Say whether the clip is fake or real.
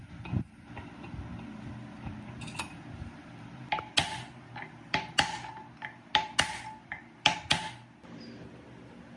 real